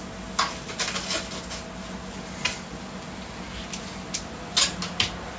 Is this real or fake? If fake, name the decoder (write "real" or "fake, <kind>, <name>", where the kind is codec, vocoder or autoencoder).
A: real